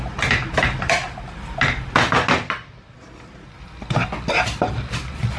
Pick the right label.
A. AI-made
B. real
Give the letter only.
B